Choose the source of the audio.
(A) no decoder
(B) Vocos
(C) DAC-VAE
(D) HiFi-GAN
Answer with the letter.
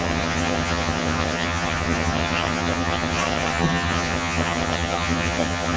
D